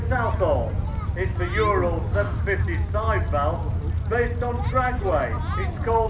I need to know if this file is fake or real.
real